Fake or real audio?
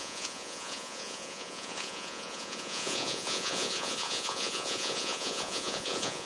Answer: fake